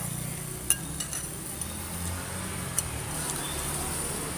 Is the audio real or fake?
real